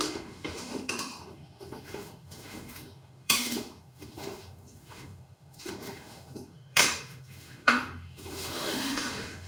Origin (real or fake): fake